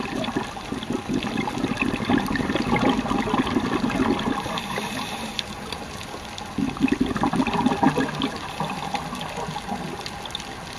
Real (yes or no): yes